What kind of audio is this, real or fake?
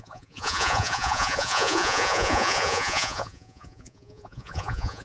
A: fake